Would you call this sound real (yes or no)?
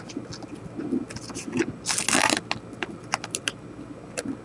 yes